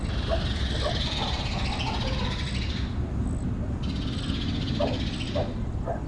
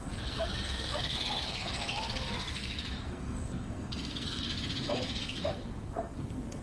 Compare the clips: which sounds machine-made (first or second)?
second